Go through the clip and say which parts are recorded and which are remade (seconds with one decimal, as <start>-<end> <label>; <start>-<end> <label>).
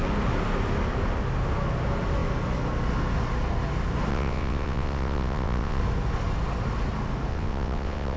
0.0-4.1 recorded; 4.1-5.8 remade; 5.8-7.3 recorded; 7.3-8.2 remade